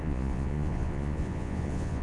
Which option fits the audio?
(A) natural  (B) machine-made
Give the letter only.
B